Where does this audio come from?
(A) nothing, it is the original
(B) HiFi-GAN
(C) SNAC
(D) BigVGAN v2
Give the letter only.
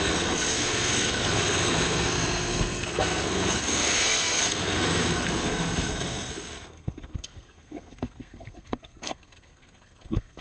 C